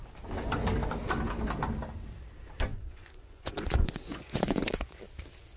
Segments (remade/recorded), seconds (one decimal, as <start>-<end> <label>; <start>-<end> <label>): 0.0-2.7 recorded; 2.7-5.0 remade; 5.0-5.6 recorded

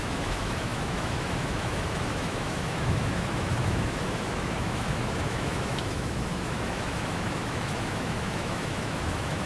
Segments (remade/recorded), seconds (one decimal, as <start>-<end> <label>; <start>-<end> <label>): 0.0-9.5 remade